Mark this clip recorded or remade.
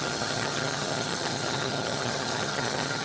remade